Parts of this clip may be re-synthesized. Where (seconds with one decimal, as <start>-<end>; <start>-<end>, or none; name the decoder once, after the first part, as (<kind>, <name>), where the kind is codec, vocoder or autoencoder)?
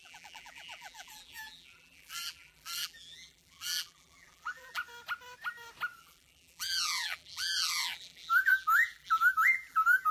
0.0-4.8 (vocoder, BigVGAN v2); 6.0-10.1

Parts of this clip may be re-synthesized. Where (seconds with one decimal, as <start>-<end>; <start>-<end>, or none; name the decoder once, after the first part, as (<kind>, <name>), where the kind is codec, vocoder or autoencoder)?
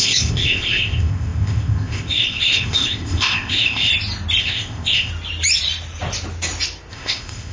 0.0-3.9 (codec, ZipCodec); 4.4-5.1; 6.9-7.5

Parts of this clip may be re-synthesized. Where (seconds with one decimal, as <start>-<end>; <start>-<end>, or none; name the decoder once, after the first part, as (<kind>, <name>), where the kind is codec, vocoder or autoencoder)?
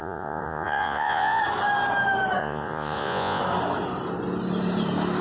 0.0-1.4 (vocoder, Vocos); 2.4-3.4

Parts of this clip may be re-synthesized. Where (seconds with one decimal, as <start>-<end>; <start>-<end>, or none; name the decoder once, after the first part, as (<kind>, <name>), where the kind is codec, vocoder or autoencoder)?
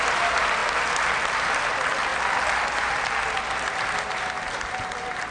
none